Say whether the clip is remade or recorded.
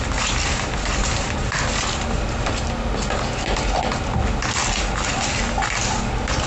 recorded